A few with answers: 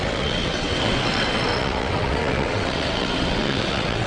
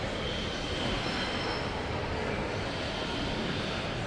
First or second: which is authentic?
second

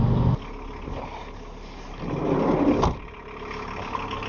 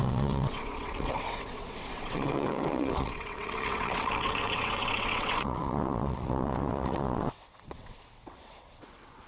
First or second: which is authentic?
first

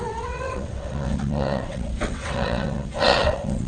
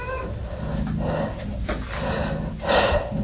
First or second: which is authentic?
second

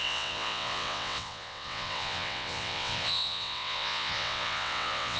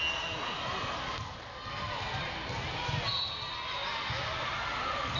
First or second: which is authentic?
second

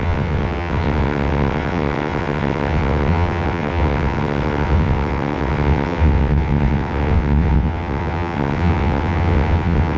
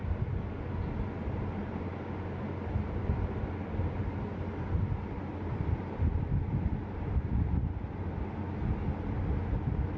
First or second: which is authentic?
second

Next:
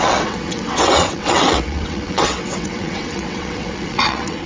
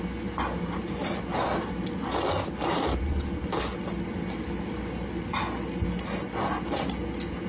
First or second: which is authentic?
second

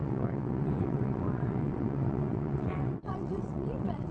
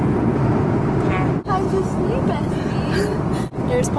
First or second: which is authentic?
second